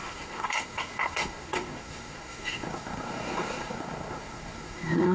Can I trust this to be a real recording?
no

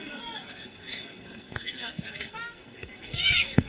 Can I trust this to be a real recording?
no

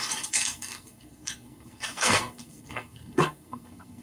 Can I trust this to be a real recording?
no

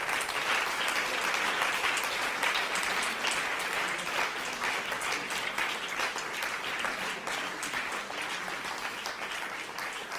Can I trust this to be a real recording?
yes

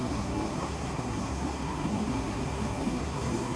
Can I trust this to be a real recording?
no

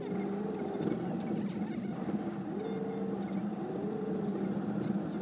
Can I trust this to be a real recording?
yes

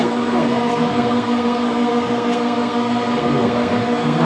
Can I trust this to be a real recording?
no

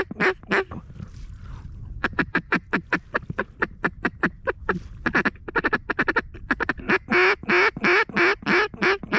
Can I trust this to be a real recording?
yes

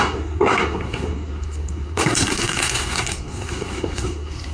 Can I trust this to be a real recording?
no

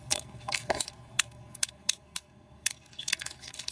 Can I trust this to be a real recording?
no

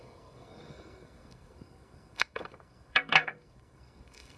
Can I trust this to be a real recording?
no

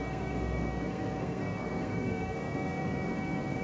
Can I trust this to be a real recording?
no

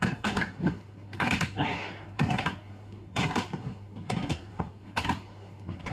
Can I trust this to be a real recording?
no